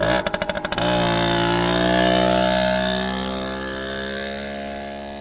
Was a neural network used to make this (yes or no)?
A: no